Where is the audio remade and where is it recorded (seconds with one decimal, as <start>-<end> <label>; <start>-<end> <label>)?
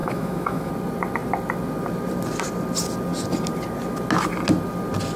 0.0-0.7 remade; 0.7-5.2 recorded